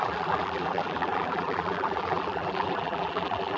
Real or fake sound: fake